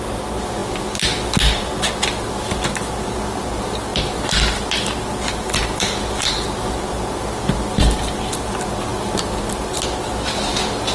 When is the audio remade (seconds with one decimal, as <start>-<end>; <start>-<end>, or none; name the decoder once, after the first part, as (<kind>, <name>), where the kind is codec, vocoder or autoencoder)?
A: none